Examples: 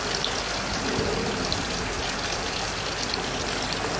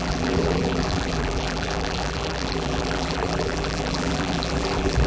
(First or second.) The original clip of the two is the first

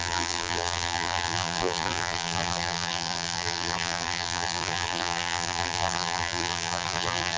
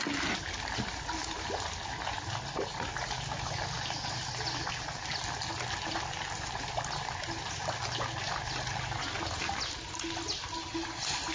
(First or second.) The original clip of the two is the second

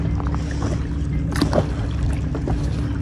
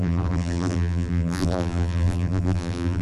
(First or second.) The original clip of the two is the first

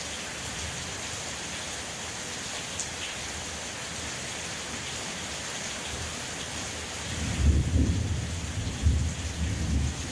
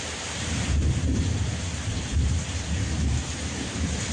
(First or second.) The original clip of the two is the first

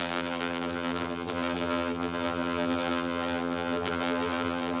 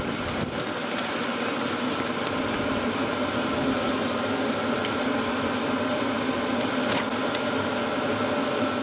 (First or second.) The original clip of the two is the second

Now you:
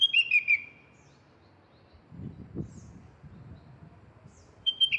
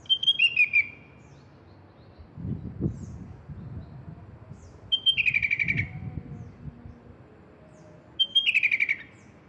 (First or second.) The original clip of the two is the second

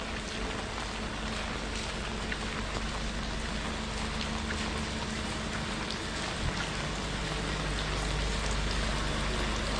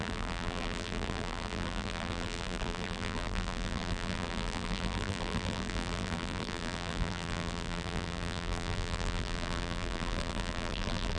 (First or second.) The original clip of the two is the first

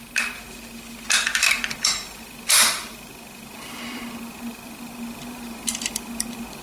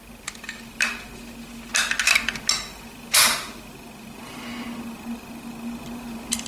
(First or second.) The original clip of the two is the second